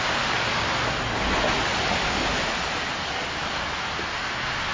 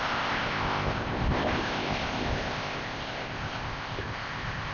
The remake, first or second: second